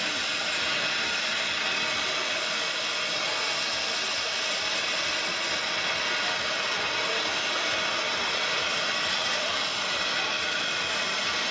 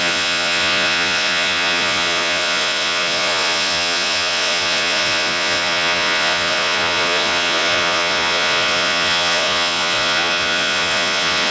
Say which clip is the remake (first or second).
second